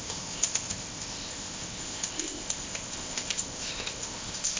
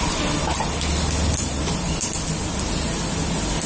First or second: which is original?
second